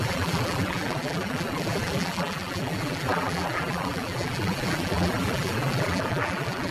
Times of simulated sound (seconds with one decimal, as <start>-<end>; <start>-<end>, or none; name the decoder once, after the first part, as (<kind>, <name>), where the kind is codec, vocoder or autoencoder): 0.0-6.7 (vocoder, BigVGAN v2)